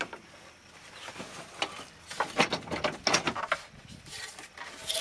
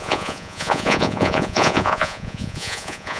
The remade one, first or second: second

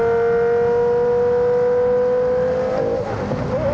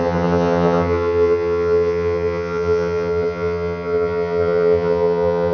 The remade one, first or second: second